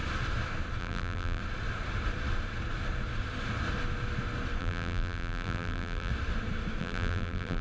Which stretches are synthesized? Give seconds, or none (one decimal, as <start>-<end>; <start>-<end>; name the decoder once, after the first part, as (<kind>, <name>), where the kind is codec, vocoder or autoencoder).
0.8-1.4 (vocoder, BigVGAN v2); 4.6-6.1; 6.8-7.6